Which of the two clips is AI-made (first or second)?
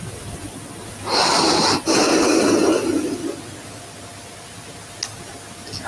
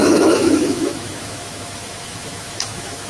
second